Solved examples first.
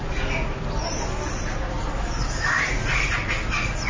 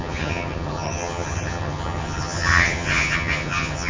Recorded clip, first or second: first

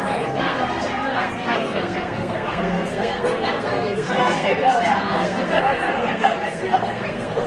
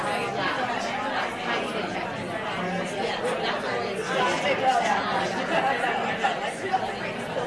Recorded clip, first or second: second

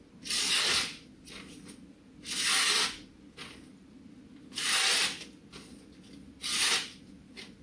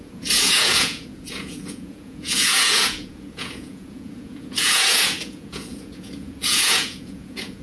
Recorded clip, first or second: first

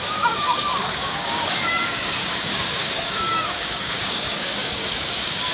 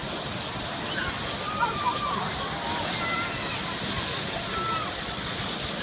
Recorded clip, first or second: second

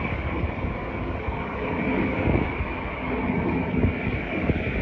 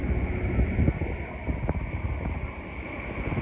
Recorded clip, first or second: second